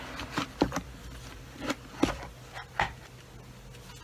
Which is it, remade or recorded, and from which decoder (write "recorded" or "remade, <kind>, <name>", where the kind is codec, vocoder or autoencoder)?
recorded